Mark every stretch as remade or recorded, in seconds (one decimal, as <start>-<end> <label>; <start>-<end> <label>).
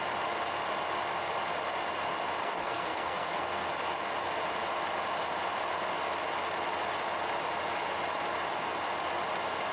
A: 0.0-2.4 recorded; 2.4-3.7 remade; 3.7-9.7 recorded